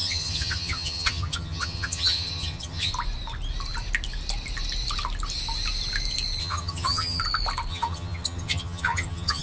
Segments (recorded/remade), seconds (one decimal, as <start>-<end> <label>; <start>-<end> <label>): 0.0-2.9 remade; 2.9-6.4 recorded; 6.4-7.2 remade; 7.2-7.7 recorded; 7.7-9.4 remade